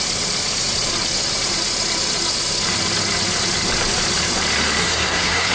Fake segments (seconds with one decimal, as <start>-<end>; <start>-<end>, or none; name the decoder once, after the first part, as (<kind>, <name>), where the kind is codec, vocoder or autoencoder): 4.8-5.5 (codec, SNAC)